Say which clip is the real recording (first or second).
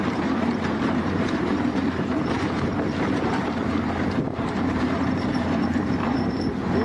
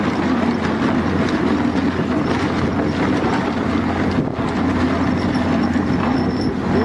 second